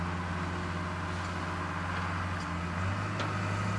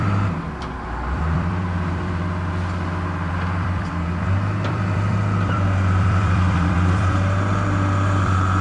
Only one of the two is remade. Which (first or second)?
second